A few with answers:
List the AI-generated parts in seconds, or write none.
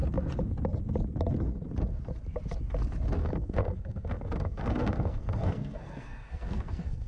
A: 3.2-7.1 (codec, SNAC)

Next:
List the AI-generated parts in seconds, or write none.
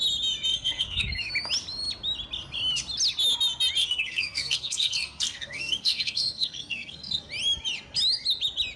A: 0.5-1.3 (codec, SNAC); 3.8-7.3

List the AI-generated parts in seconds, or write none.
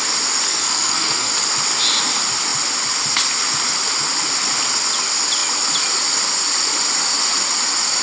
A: 0.5-1.3 (codec, SNAC)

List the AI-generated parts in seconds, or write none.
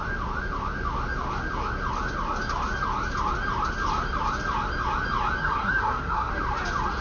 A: 5.4-6.3 (codec, SNAC)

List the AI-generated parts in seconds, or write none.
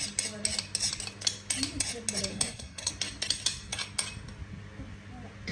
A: 2.3-2.9 (codec, SNAC)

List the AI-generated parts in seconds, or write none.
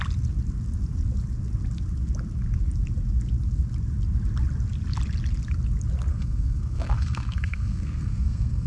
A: 6.1-8.7 (codec, SNAC)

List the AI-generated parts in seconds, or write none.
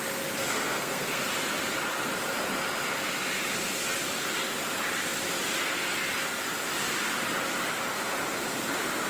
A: 0.4-1.2 (codec, SNAC)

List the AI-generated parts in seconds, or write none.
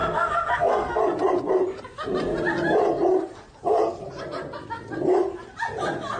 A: 0.0-1.0 (codec, SNAC)